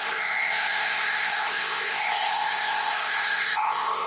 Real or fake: fake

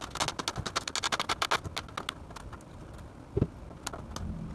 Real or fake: real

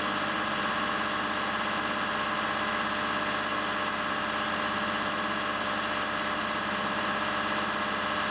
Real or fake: real